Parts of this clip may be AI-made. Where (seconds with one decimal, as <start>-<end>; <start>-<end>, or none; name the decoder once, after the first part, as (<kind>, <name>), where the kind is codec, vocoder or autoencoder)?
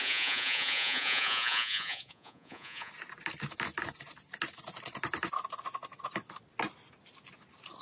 0.0-2.9 (vocoder, Vocos)